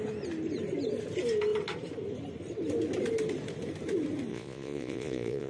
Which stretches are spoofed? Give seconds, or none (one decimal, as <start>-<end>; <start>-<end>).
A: 4.3-5.5